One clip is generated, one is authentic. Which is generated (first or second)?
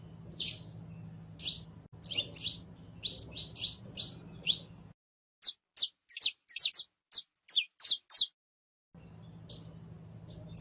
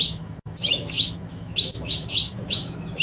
second